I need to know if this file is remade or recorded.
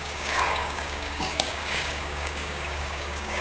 remade